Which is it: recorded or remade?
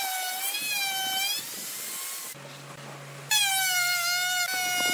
recorded